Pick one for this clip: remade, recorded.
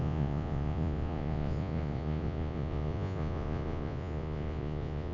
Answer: remade